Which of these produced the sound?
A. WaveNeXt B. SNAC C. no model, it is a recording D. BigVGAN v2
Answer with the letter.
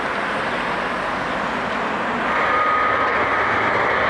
C